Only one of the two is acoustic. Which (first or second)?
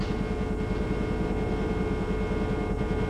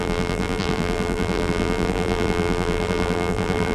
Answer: first